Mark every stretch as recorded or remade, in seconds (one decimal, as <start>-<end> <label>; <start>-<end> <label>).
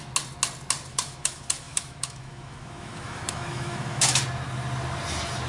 0.0-0.9 recorded; 0.9-4.2 remade; 4.2-5.5 recorded